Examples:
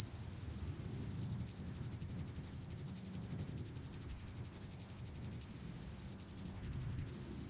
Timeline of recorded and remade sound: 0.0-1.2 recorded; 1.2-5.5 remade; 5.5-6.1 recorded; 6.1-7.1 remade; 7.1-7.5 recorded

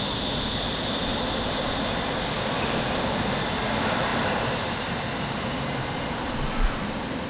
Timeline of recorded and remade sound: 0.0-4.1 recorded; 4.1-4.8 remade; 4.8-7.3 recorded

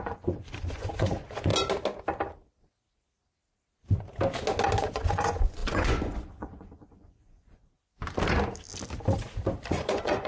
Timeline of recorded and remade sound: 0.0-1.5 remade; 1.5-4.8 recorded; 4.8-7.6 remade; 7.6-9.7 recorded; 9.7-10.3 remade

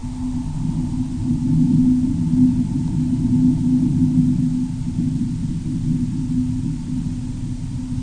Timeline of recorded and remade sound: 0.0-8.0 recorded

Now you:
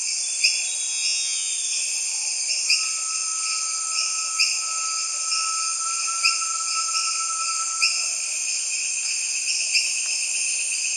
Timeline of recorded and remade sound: 0.0-0.9 recorded; 0.9-1.5 remade; 1.5-11.0 recorded

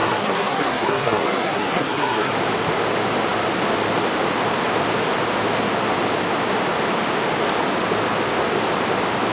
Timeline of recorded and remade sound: 0.0-2.3 remade; 2.3-9.3 recorded